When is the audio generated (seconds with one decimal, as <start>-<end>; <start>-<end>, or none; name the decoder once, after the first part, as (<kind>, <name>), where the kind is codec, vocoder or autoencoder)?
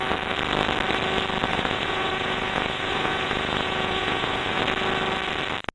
1.5-4.6 (vocoder, Vocos)